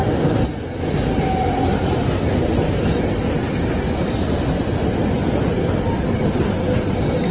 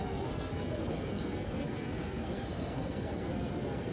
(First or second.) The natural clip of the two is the first